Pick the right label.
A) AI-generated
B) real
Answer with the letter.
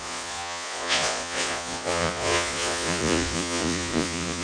A